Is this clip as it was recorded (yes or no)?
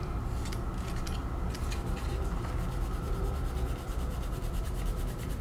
yes